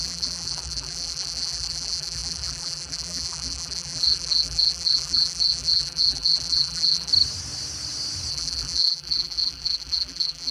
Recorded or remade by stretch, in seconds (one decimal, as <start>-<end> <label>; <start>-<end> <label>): 0.0-7.1 remade; 7.1-8.3 recorded; 8.3-10.5 remade